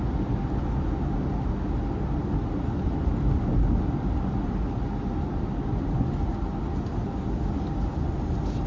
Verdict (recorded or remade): recorded